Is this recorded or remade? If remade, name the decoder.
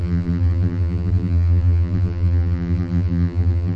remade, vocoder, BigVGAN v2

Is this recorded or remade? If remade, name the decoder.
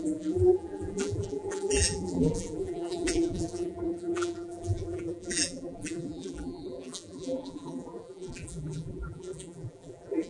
remade, vocoder, BigVGAN v2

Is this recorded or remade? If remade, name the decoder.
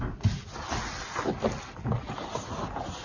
recorded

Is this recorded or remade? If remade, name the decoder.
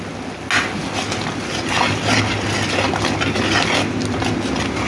recorded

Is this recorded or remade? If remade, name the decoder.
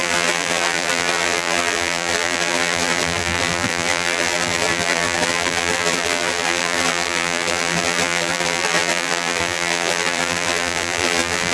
remade, vocoder, BigVGAN v2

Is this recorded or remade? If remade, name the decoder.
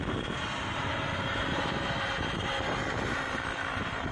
remade, vocoder, BigVGAN v2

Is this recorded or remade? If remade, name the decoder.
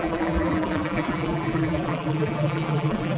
remade, vocoder, BigVGAN v2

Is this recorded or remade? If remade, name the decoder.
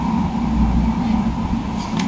recorded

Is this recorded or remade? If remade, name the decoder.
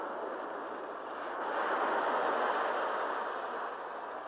remade, vocoder, BigVGAN v2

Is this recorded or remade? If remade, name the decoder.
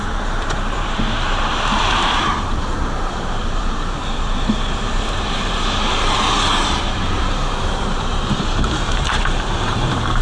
remade, vocoder, BigVGAN v2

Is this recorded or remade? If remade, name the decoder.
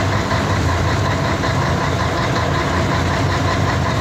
recorded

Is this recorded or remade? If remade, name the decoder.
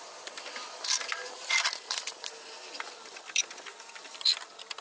remade, vocoder, BigVGAN v2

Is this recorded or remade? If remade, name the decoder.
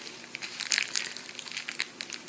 recorded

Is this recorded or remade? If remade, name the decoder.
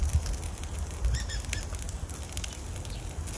recorded